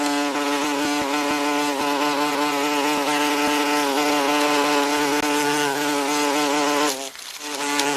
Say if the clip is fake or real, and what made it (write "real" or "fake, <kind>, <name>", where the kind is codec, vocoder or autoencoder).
real